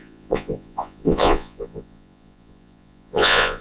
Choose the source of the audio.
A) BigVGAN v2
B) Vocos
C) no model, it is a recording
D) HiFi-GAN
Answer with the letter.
B